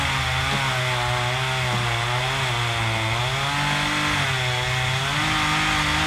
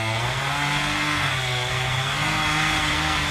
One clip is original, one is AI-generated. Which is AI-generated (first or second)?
second